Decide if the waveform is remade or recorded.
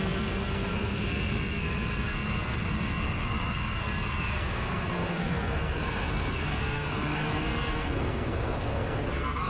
remade